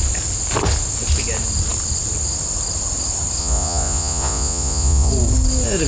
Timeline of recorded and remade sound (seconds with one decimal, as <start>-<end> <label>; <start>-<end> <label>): 0.0-3.4 recorded; 3.4-5.1 remade; 5.1-5.9 recorded